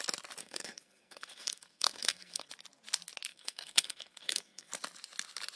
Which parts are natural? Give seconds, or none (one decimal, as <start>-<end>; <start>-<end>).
0.0-0.4; 2.5-3.3; 4.7-5.6

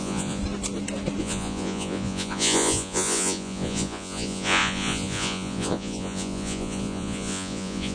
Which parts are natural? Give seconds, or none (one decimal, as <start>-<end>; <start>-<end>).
0.4-1.2